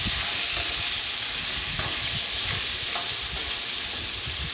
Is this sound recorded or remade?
recorded